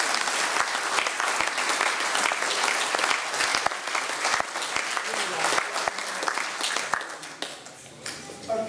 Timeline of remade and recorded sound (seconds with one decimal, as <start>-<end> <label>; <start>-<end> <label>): 0.0-8.7 recorded